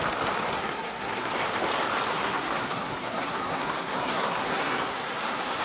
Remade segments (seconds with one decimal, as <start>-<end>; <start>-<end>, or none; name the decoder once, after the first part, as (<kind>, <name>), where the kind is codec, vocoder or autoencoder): 0.5-1.3 (codec, SNAC); 2.1-5.6